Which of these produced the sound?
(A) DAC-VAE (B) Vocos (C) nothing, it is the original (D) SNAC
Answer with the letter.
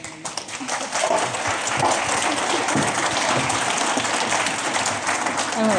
C